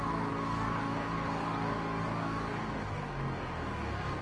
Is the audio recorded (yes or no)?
no